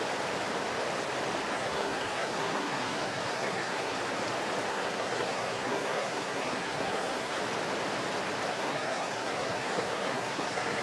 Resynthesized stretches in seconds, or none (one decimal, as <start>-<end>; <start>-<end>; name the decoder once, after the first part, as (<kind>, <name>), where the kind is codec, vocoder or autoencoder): 1.5-4.0 (codec, SNAC); 4.7-7.4; 8.5-10.8